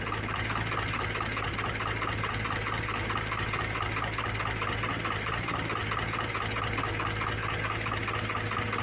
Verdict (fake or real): real